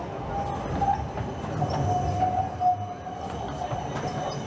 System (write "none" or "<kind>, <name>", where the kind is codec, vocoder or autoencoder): none